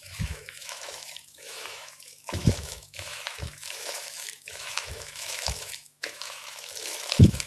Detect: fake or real fake